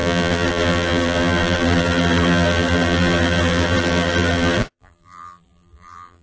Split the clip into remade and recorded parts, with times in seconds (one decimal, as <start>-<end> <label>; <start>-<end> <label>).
0.0-6.2 remade